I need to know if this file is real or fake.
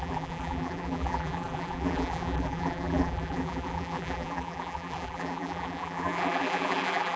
fake